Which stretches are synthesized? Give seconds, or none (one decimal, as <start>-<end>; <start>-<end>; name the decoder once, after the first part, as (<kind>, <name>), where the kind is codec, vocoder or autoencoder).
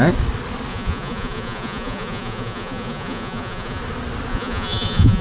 0.7-3.8 (vocoder, Vocos); 4.3-5.2